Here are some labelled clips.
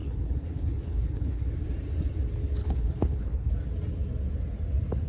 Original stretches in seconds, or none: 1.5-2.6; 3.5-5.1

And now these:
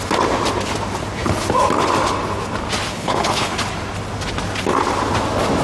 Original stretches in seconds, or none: 0.0-2.9; 3.5-5.6

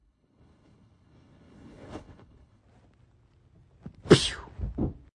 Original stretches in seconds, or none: 2.6-5.1

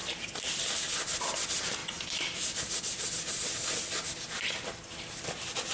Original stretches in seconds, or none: 0.0-5.7

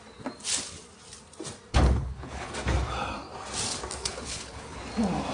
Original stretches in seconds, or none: 0.0-1.7; 2.5-4.0; 4.8-5.3

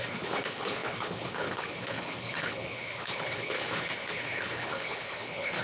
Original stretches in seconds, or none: none

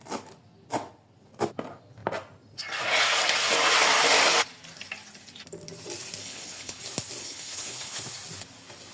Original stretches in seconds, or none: 0.0-6.2; 6.8-7.2; 8.0-8.9

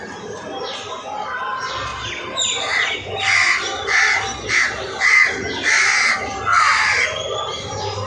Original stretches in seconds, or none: 0.0-8.1